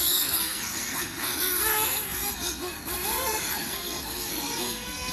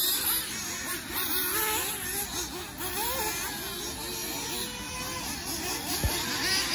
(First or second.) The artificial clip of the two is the first